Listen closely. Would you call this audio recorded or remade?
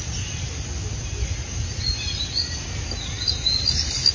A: recorded